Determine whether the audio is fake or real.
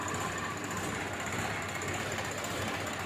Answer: real